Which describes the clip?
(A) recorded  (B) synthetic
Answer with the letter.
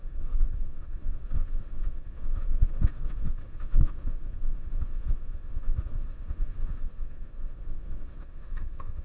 B